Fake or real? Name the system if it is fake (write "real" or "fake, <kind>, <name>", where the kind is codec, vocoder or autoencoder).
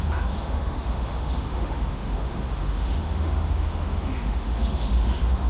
fake, autoencoder, DAC-VAE